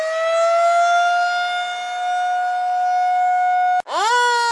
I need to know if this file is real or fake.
real